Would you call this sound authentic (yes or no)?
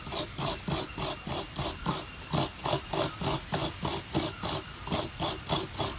yes